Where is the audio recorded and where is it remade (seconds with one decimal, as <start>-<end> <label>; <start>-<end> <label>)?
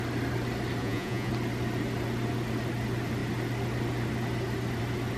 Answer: 0.0-0.8 recorded; 0.8-1.3 remade; 1.3-5.2 recorded